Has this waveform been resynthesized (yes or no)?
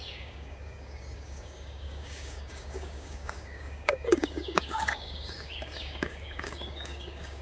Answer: yes